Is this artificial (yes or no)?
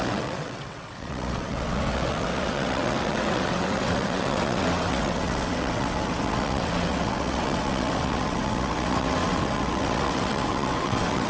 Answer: yes